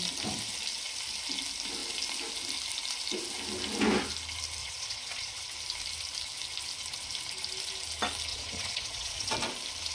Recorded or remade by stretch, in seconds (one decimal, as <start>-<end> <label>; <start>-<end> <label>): 0.0-4.6 recorded; 4.6-5.4 remade; 5.4-8.3 recorded; 8.3-9.3 remade; 9.3-9.9 recorded